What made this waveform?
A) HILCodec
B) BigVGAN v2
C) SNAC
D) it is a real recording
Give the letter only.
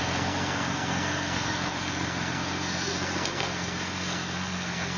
C